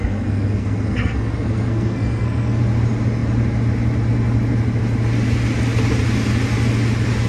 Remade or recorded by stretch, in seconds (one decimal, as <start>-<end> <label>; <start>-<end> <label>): 0.0-2.6 remade; 2.6-7.3 recorded